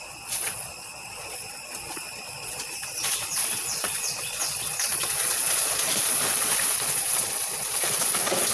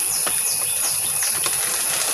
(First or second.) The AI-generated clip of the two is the first